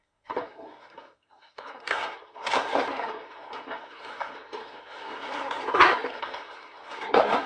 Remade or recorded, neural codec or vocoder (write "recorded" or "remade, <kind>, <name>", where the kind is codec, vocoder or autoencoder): remade, codec, SNAC